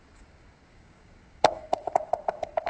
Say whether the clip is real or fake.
fake